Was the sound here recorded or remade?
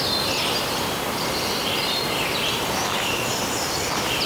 remade